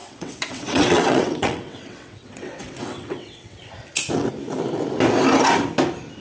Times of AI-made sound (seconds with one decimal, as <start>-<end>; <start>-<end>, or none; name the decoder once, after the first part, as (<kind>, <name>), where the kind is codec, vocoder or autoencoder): 0.0-3.7 (vocoder, WaveNeXt)